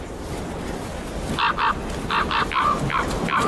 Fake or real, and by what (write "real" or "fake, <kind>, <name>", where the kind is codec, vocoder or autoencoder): real